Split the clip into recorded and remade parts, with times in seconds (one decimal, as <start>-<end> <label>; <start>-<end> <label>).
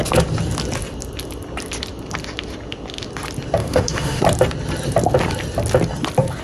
0.0-3.6 recorded; 3.6-4.2 remade; 4.2-6.4 recorded